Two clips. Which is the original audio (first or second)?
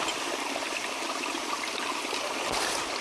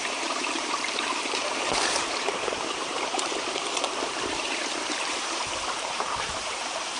first